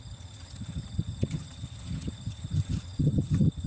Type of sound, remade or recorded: remade